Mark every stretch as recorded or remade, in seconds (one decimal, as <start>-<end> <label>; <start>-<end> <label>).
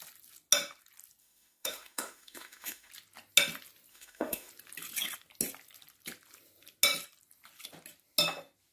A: 0.0-1.2 recorded; 1.2-2.9 remade; 2.9-3.9 recorded; 3.9-4.5 remade; 4.5-8.7 recorded